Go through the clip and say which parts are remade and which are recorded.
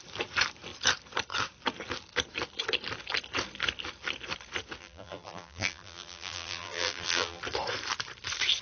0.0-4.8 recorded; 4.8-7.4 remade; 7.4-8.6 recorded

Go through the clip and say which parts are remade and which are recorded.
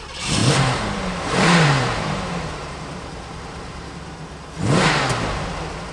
0.0-0.4 recorded; 0.4-3.9 remade; 3.9-5.9 recorded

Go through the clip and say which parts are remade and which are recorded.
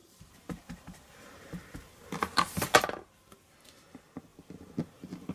0.0-1.5 remade; 1.5-5.3 recorded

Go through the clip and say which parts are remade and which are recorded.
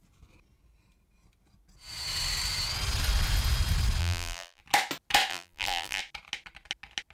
0.0-4.0 recorded; 4.0-4.6 remade; 4.6-5.3 recorded; 5.3-6.0 remade; 6.0-7.1 recorded